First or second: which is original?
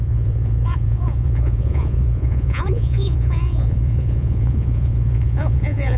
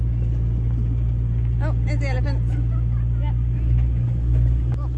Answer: second